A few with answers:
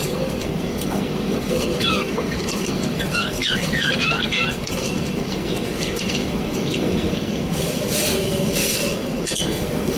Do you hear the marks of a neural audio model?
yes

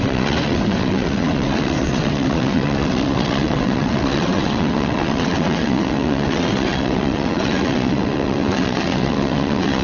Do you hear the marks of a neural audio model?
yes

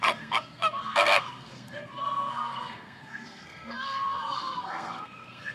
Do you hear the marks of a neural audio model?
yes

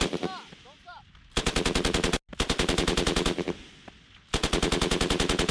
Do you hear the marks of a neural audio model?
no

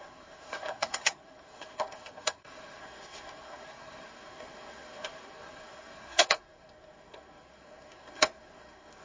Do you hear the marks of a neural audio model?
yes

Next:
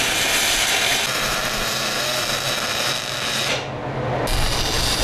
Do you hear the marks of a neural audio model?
no